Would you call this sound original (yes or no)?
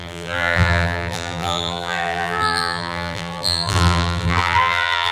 no